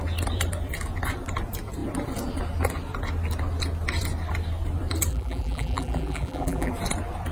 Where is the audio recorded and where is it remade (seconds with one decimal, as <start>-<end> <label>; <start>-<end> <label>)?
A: 0.0-5.1 recorded; 5.1-6.7 remade; 6.7-7.3 recorded